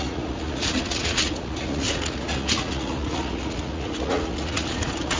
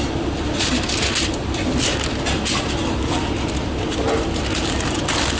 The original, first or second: second